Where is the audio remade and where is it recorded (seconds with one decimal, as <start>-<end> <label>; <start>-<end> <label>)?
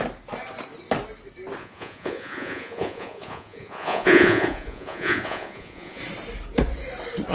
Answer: 0.0-1.6 recorded; 1.6-6.0 remade; 6.0-7.3 recorded